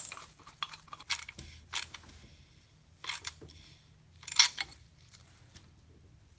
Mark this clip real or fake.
real